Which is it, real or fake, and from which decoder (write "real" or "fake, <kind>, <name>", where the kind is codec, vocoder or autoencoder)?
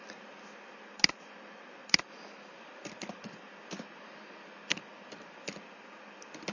real